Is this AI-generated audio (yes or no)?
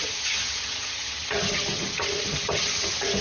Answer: yes